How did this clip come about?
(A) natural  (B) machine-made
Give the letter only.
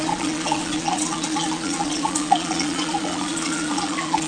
B